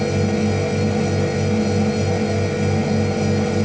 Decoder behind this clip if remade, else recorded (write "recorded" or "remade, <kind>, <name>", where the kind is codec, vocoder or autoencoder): recorded